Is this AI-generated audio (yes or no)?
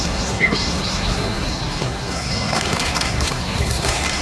yes